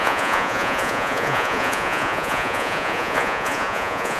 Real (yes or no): no